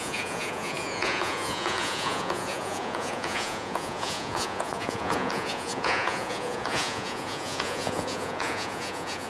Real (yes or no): no